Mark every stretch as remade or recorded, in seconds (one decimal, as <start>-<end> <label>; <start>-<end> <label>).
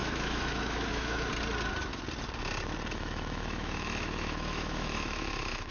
0.0-1.3 remade; 1.3-2.9 recorded; 2.9-5.7 remade